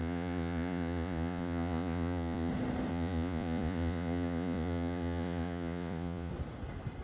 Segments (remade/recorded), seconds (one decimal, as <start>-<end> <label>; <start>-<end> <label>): 0.0-2.5 remade; 2.5-2.9 recorded; 2.9-6.3 remade; 6.3-7.0 recorded